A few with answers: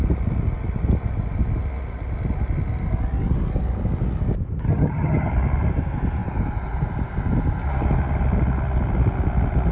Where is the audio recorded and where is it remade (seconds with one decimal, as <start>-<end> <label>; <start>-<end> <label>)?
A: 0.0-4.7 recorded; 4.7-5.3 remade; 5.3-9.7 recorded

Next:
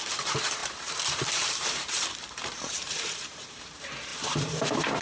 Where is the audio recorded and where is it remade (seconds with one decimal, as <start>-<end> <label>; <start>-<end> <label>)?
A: 0.0-5.0 remade

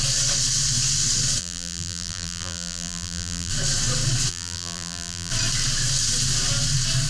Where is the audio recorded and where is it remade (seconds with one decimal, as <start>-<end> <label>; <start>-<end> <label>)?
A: 0.0-1.4 recorded; 1.4-3.5 remade; 3.5-4.3 recorded; 4.3-5.3 remade; 5.3-7.1 recorded

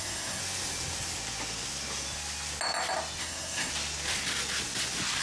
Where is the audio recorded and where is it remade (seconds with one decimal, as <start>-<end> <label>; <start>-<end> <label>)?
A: 0.0-0.4 remade; 0.4-3.2 recorded; 3.2-3.7 remade; 3.7-5.2 recorded

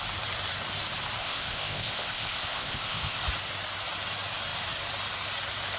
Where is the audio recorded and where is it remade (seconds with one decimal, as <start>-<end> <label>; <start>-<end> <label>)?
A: 0.0-1.2 recorded; 1.2-3.2 remade; 3.2-5.8 recorded

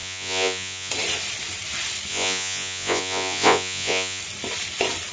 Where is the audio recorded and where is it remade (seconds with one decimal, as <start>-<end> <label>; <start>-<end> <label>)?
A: 0.0-0.9 remade; 0.9-2.1 recorded; 2.1-4.2 remade; 4.2-5.1 recorded